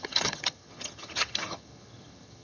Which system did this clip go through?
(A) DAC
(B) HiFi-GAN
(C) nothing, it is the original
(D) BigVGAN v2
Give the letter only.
B